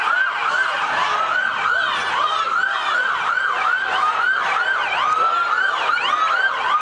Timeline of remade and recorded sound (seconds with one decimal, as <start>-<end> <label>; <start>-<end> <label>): 0.0-0.4 recorded; 0.4-1.2 remade; 1.2-6.8 recorded